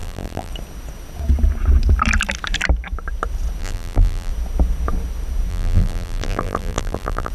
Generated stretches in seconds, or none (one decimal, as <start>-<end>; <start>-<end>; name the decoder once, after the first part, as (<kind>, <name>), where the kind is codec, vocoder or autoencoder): 0.0-0.5 (vocoder, BigVGAN v2); 3.6-4.3; 5.5-7.3